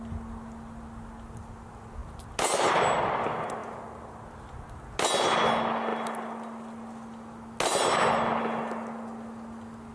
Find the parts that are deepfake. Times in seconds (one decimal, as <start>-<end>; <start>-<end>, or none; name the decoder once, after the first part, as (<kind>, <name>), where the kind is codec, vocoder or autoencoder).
none